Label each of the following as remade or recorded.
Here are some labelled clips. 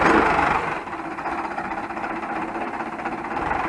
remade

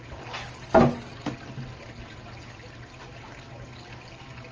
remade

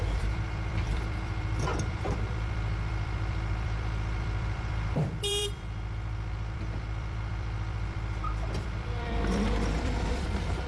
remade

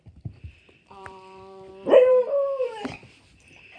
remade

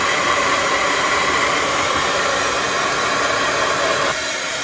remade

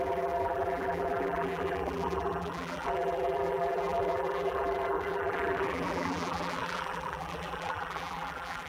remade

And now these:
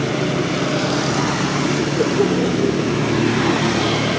recorded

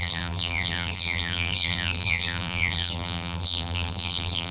remade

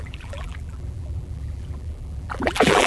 remade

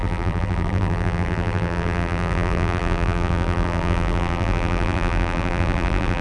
remade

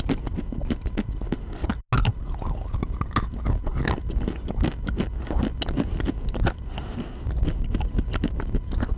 recorded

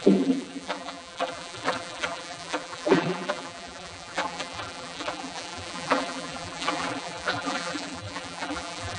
remade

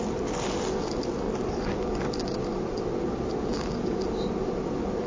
recorded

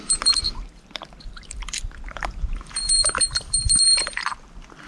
remade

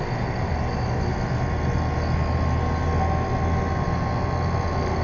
recorded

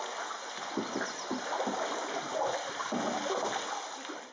recorded